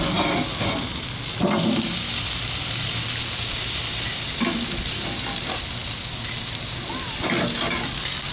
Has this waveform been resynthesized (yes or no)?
no